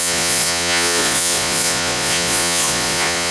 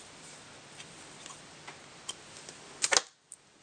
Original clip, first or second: second